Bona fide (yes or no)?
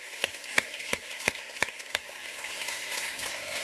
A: no